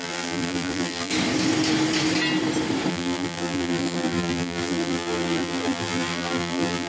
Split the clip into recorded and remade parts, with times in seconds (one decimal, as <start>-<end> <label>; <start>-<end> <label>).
0.0-1.1 remade; 1.1-2.9 recorded; 2.9-6.9 remade